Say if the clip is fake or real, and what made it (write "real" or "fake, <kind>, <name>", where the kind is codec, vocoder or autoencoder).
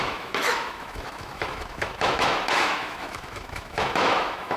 fake, autoencoder, DAC-VAE